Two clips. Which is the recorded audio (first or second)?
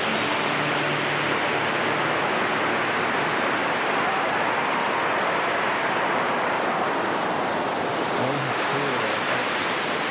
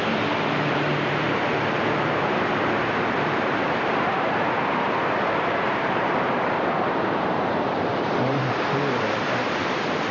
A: first